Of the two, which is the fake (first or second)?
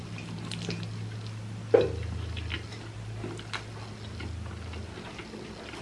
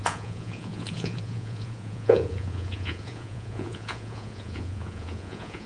second